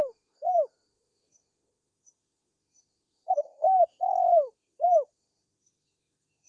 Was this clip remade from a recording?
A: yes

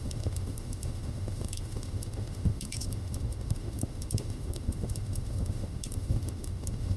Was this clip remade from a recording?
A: yes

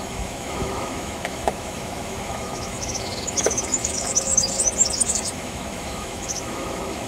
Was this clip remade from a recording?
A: yes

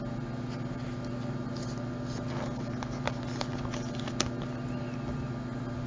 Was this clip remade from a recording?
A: no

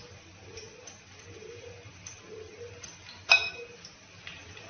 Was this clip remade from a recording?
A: no